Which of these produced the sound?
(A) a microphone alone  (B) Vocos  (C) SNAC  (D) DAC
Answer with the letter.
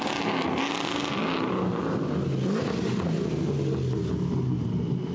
A